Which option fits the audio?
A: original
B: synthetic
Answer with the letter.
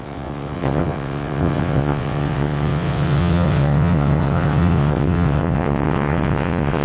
B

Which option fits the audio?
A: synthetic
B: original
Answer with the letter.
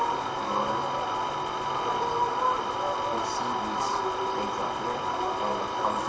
B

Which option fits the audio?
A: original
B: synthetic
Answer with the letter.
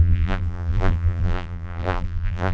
B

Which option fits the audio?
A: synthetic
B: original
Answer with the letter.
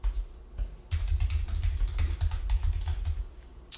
B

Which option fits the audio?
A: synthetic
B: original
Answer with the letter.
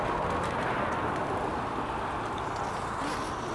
B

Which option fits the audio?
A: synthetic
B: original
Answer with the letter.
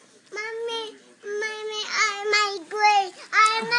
B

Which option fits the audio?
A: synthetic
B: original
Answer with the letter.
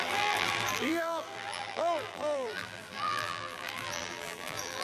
A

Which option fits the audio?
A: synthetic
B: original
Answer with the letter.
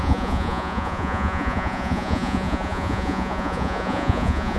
A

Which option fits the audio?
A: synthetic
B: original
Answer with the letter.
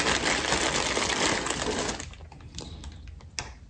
B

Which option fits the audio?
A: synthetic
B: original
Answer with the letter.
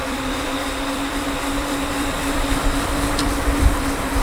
A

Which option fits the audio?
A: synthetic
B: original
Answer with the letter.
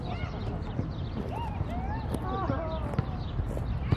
B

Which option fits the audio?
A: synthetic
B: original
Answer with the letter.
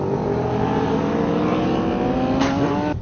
B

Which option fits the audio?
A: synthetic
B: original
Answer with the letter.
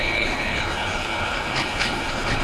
A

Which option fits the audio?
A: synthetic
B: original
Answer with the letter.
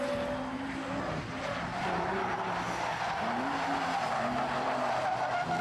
B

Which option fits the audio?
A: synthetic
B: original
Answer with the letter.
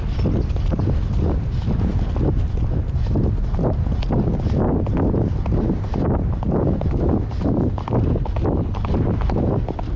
B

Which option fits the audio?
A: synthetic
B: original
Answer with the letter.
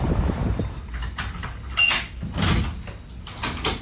B